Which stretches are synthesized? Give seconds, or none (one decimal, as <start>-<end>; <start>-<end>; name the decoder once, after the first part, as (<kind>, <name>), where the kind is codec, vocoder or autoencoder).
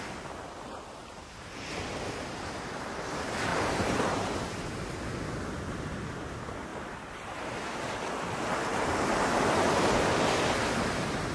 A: 3.5-4.3 (vocoder, BigVGAN v2); 6.7-7.5; 8.7-9.9